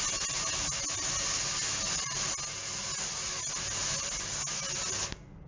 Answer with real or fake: real